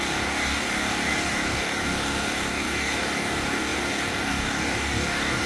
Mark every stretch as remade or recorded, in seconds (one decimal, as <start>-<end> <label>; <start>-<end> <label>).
0.0-5.5 remade